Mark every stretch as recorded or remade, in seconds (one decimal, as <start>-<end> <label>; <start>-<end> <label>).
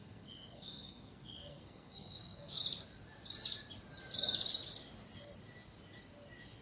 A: 0.0-2.6 remade; 2.6-6.6 recorded